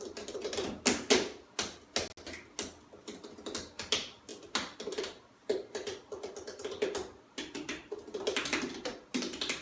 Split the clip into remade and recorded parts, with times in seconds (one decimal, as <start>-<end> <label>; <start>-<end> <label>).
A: 0.0-9.6 recorded